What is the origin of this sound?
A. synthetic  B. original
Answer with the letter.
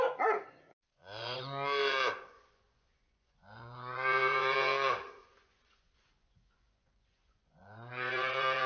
A